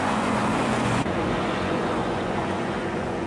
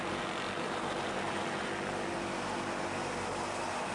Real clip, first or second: second